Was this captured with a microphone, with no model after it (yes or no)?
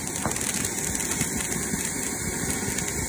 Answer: yes